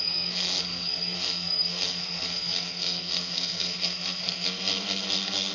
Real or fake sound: fake